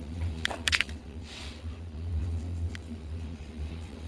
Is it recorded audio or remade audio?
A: remade